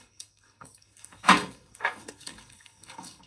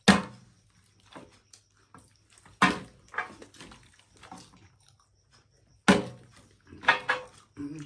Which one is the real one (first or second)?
second